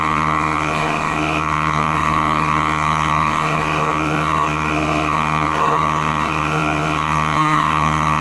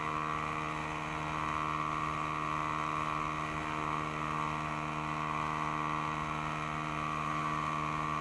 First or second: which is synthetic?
first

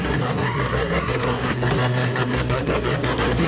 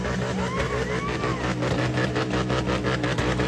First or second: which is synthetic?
first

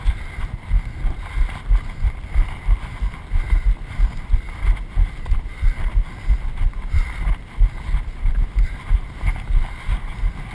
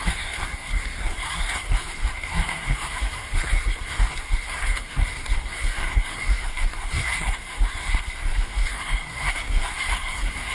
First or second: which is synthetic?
second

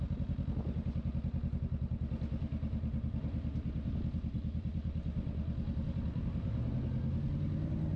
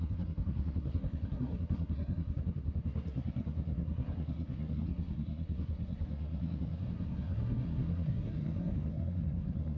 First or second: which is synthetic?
second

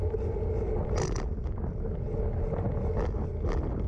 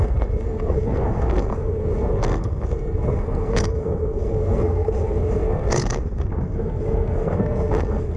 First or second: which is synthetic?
second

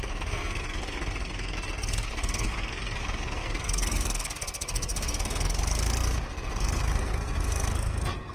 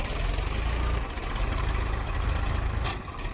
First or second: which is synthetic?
first